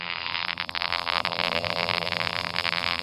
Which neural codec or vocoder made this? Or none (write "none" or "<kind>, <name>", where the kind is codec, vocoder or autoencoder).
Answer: vocoder, BigVGAN v2